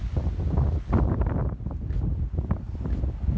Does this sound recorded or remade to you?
recorded